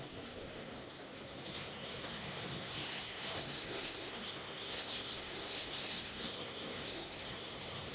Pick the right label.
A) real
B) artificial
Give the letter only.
B